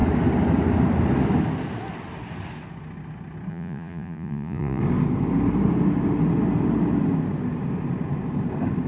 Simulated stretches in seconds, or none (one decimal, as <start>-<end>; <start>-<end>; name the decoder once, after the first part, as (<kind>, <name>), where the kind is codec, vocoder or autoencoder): 3.5-4.8 (vocoder, Vocos)